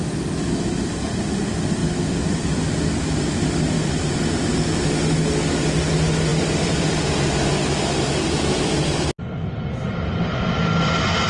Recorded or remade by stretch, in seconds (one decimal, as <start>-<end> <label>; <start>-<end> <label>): 0.0-6.3 recorded; 6.3-7.0 remade; 7.0-11.3 recorded